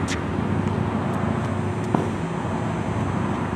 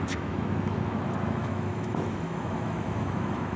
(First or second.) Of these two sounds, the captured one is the first